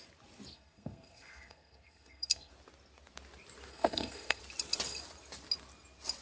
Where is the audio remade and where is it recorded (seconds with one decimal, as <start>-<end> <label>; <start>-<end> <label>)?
0.0-0.5 recorded; 0.5-2.5 remade; 2.5-3.7 recorded; 3.7-4.4 remade; 4.4-6.2 recorded